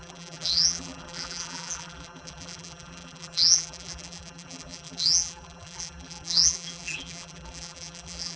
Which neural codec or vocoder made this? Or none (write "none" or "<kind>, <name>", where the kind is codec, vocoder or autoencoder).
vocoder, BigVGAN v2